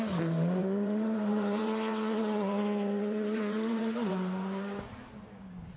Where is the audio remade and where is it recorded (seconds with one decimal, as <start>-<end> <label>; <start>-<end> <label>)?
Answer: 0.0-0.6 recorded; 0.6-4.1 remade; 4.1-5.8 recorded